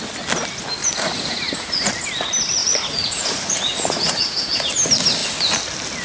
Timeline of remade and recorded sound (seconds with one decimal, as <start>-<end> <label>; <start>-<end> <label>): 0.0-0.8 recorded; 0.8-1.9 remade; 1.9-2.6 recorded; 2.6-4.4 remade; 4.4-6.0 recorded